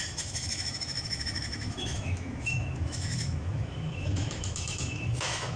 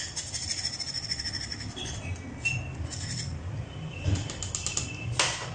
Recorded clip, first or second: second